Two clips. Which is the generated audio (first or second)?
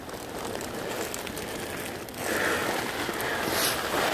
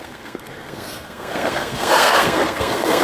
second